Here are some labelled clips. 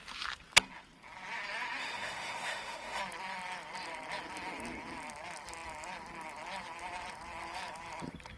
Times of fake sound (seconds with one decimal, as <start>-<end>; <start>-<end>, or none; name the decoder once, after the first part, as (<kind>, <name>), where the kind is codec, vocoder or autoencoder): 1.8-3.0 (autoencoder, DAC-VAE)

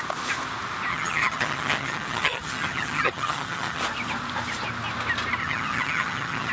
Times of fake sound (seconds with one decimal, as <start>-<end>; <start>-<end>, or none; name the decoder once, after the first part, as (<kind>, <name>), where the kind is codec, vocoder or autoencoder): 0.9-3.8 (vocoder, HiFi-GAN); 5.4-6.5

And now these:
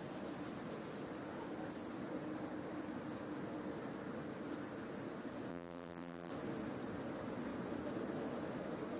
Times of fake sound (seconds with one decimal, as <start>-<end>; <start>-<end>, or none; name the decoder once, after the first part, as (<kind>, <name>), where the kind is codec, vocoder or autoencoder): 5.5-6.3 (vocoder, BigVGAN v2)

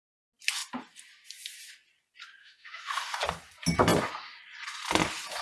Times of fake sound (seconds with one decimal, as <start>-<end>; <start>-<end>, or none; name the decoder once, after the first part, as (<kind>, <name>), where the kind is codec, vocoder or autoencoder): 2.4-3.2 (autoencoder, DAC-VAE)

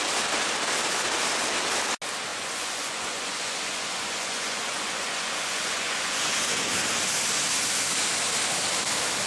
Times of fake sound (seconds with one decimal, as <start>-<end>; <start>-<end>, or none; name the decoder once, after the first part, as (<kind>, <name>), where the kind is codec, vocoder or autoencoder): 2.3-6.7 (vocoder, Vocos)